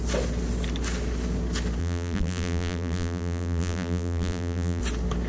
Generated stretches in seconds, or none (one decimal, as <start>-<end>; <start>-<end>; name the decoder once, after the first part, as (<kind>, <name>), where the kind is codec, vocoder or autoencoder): 1.8-4.8 (vocoder, BigVGAN v2)

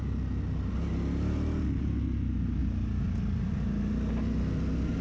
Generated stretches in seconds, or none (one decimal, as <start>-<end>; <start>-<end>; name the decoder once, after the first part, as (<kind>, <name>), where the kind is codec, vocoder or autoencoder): none